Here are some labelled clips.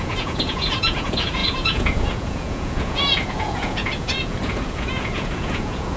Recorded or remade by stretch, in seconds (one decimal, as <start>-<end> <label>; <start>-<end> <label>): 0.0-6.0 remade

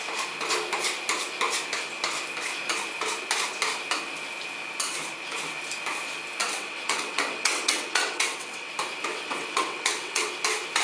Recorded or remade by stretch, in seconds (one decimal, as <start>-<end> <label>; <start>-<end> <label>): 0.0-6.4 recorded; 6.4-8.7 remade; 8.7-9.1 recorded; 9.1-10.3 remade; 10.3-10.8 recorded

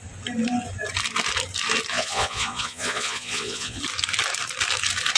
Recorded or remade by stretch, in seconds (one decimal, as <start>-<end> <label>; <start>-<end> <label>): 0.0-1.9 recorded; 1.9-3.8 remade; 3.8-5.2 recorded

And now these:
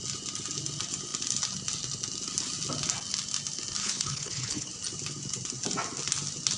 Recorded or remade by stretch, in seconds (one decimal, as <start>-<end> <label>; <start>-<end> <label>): 0.0-3.8 recorded; 3.8-4.7 remade; 4.7-6.6 recorded

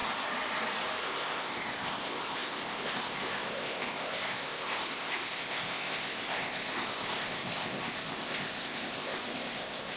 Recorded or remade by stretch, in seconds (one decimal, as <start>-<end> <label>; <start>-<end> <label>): 0.0-1.0 recorded; 1.0-10.0 remade